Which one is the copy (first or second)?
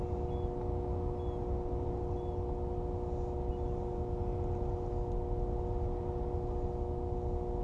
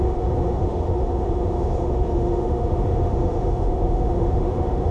second